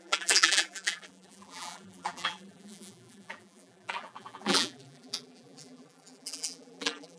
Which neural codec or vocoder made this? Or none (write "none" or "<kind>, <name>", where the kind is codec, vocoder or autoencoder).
vocoder, BigVGAN v2